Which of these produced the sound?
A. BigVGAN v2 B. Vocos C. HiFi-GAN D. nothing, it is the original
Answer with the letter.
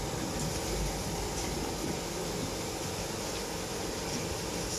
D